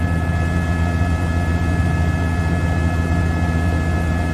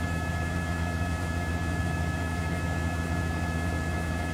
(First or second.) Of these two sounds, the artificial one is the second